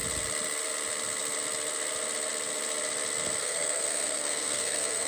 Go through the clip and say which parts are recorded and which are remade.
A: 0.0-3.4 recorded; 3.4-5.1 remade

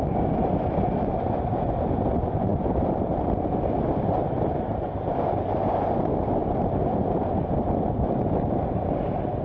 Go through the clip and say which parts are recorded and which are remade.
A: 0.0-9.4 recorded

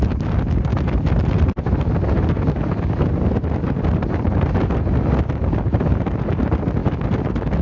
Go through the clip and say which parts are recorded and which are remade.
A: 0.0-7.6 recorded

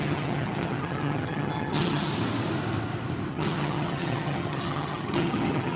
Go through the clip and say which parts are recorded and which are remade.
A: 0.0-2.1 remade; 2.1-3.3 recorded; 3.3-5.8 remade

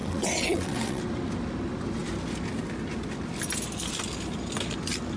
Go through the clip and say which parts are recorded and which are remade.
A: 0.0-1.0 remade; 1.0-5.2 recorded